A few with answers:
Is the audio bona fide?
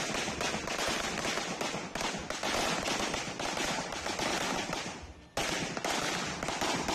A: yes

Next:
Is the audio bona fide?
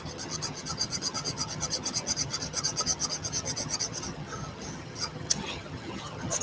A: no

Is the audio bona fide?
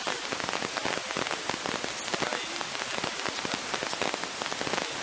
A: yes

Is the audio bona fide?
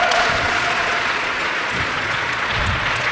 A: no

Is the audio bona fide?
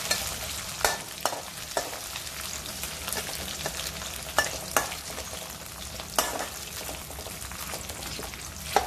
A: yes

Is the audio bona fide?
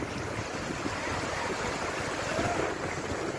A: yes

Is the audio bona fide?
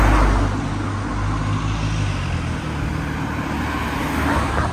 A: yes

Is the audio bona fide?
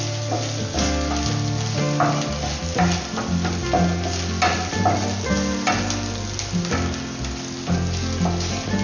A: yes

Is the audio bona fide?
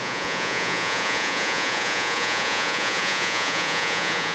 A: no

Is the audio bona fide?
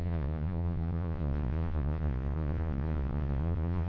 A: no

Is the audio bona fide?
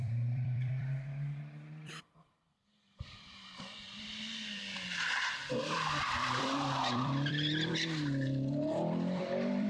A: no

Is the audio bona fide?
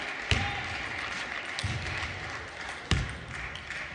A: yes